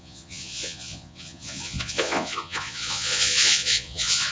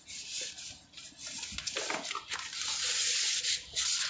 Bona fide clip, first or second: second